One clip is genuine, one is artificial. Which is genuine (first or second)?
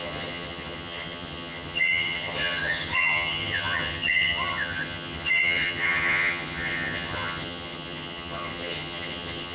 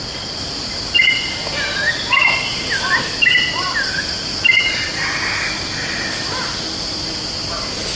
second